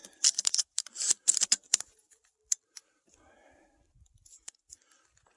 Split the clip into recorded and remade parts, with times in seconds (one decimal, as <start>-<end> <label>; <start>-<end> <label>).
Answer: 0.0-3.2 remade; 3.2-5.4 recorded